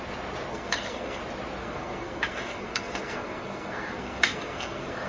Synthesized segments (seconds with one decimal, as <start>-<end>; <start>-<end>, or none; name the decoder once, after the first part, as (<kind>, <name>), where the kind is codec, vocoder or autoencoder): 0.5-1.2 (codec, SNAC); 1.6-5.1